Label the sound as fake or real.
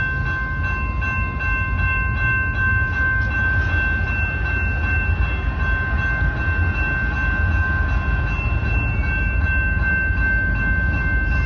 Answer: real